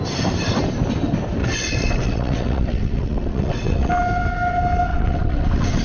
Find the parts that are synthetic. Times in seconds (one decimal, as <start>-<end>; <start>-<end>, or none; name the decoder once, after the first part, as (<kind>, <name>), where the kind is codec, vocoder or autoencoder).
1.4-3.9 (vocoder, WaveNeXt); 4.9-5.8